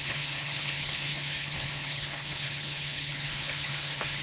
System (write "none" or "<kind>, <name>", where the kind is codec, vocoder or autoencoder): codec, HILCodec